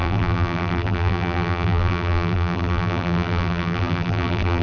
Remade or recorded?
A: remade